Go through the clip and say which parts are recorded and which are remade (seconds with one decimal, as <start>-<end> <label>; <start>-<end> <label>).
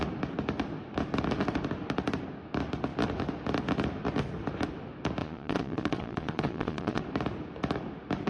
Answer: 0.0-5.2 recorded; 5.2-7.0 remade; 7.0-8.3 recorded